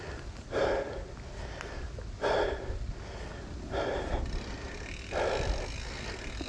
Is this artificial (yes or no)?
no